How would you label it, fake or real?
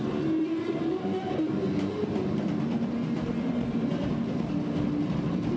real